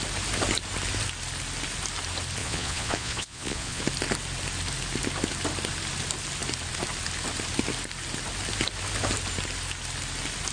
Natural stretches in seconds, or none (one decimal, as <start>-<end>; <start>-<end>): 0.0-2.4; 3.8-10.5